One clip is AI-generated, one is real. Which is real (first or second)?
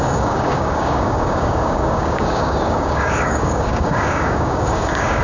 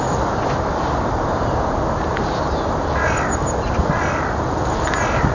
second